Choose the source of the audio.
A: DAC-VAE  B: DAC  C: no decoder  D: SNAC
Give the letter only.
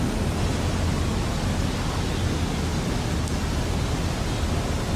C